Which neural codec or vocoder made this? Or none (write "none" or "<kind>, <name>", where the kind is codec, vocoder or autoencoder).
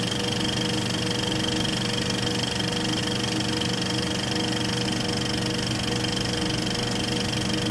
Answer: none